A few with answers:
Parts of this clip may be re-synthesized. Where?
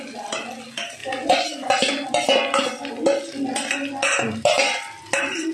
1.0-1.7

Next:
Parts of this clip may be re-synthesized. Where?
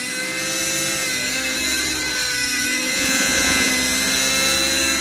2.9-3.7